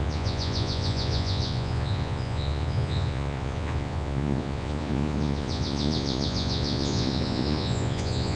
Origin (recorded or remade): remade